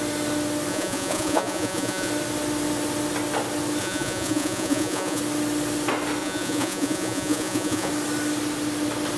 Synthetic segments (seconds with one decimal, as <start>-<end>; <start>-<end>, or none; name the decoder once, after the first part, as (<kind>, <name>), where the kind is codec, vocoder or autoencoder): 0.7-2.1 (vocoder, Vocos); 3.8-5.2; 6.2-7.9